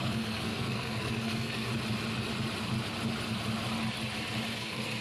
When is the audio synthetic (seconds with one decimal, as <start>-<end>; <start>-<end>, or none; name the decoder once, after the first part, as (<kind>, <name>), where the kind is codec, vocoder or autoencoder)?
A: 0.0-1.7 (codec, SNAC); 4.5-5.0

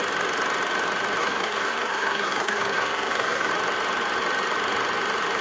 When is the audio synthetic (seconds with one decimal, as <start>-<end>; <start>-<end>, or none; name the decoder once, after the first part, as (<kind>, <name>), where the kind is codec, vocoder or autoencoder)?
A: 1.2-3.5 (codec, SNAC)

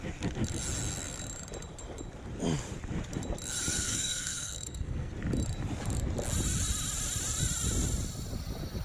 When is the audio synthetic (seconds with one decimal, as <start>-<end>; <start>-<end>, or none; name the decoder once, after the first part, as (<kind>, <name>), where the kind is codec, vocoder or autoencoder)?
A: 3.7-5.1 (codec, SNAC)

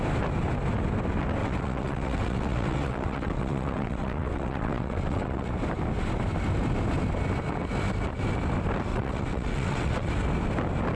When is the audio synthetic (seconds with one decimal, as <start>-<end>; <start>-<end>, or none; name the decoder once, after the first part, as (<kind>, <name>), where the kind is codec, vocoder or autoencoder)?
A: 1.4-5.5 (vocoder, WaveNeXt); 8.9-10.1

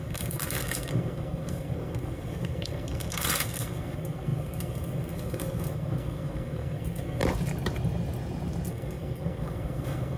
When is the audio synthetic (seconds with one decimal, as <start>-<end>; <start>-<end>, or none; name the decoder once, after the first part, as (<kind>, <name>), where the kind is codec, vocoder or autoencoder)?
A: 0.0-7.2 (codec, SNAC); 8.7-10.2